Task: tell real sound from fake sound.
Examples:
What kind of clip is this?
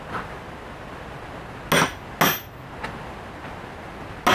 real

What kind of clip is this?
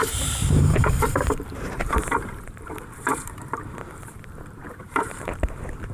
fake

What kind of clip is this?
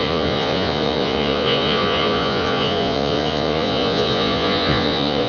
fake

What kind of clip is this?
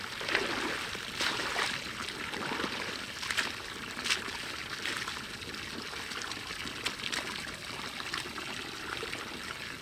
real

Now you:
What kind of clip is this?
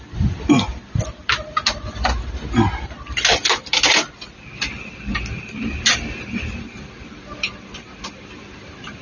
real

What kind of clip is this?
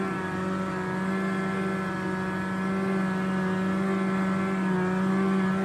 real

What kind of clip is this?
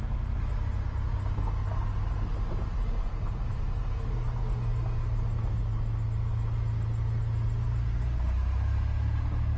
real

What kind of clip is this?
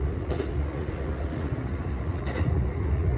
fake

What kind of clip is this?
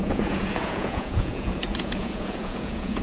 fake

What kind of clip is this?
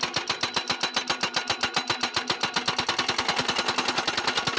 real